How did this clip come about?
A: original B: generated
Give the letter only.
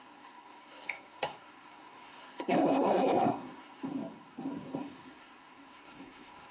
B